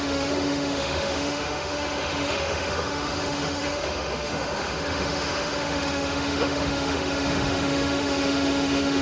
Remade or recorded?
remade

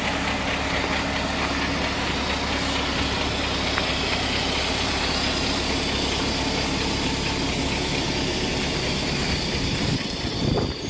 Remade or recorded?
recorded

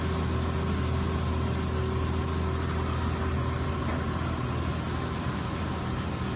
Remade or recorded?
recorded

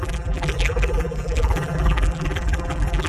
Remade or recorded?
remade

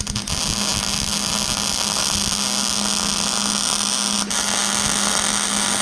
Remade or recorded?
recorded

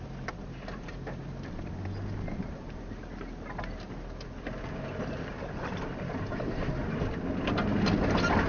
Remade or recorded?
recorded